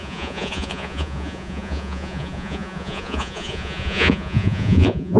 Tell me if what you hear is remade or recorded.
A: remade